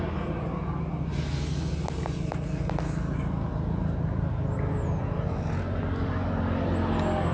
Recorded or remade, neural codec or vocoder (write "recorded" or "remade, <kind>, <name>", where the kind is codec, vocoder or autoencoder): recorded